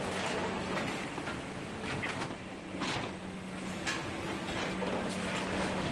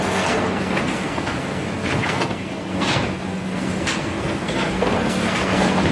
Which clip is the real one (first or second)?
first